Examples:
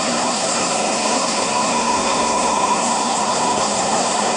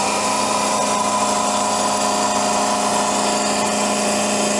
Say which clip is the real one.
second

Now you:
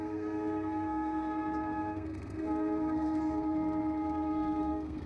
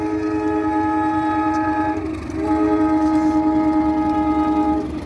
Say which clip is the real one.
second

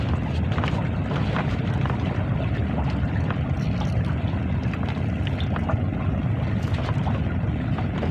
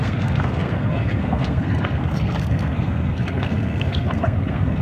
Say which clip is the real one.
first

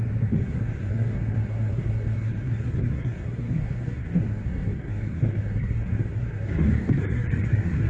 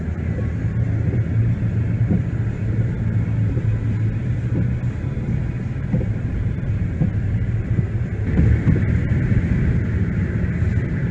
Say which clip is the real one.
second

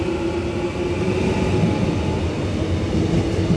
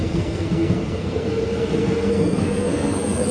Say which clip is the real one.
first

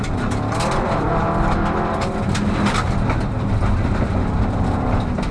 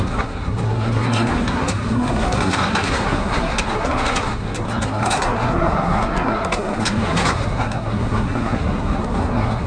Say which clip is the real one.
first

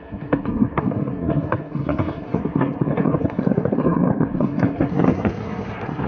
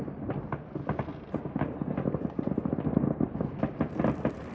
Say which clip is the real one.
second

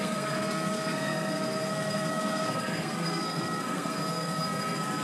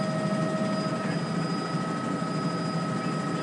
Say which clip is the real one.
second